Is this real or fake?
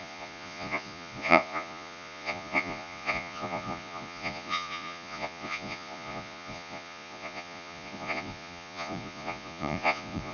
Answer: fake